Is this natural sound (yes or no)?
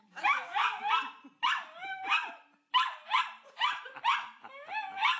yes